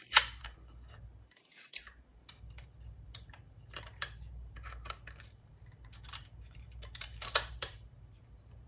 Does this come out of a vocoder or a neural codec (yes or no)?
yes